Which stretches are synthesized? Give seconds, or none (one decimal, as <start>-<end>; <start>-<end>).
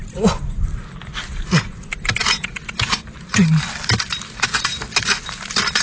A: none